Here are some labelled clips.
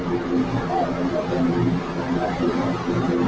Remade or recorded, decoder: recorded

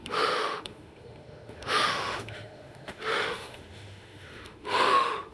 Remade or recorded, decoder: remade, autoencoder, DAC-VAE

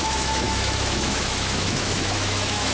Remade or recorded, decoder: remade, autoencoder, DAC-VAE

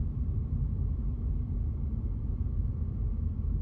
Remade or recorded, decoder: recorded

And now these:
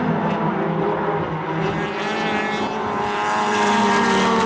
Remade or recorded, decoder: recorded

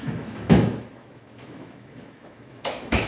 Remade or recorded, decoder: remade, autoencoder, DAC-VAE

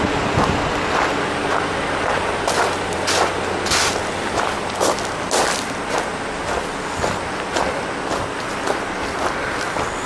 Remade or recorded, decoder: recorded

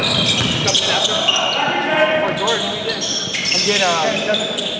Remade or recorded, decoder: recorded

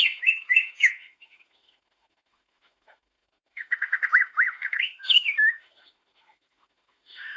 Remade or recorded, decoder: remade, autoencoder, DAC-VAE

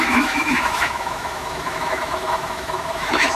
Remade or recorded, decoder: remade, autoencoder, DAC-VAE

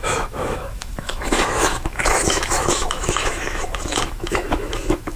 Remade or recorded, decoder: remade, autoencoder, DAC-VAE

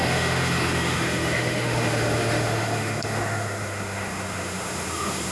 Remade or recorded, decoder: remade, autoencoder, DAC-VAE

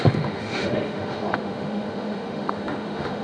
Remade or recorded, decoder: remade, autoencoder, DAC-VAE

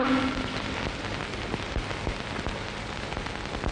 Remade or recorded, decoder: recorded